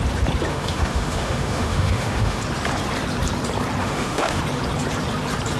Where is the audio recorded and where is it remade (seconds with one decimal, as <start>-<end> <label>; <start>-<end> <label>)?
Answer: 0.0-0.5 recorded; 0.5-2.4 remade; 2.4-3.8 recorded; 3.8-4.4 remade; 4.4-5.6 recorded